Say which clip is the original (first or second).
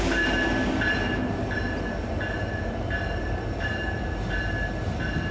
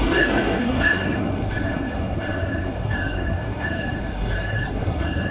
first